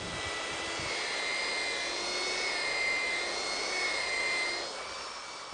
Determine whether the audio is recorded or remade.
recorded